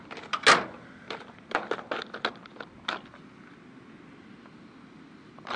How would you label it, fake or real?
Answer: real